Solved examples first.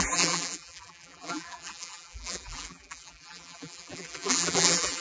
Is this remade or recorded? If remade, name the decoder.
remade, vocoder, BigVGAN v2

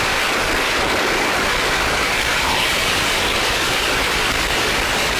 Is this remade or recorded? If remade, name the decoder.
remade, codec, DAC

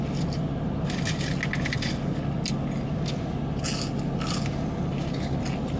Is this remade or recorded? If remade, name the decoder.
recorded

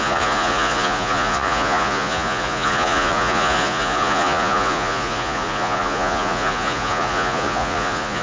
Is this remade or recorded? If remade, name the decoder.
remade, vocoder, Vocos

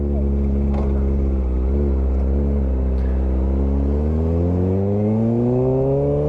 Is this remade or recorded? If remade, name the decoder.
recorded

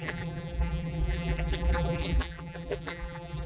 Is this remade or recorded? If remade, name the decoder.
remade, vocoder, BigVGAN v2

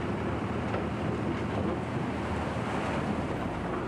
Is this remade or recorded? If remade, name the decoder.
recorded